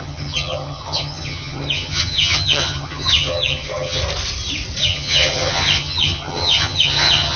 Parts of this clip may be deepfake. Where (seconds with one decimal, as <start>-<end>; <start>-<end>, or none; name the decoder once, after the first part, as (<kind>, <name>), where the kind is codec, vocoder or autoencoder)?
0.0-4.0 (vocoder, HiFi-GAN); 4.8-7.4